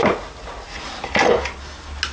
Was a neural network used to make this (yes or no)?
no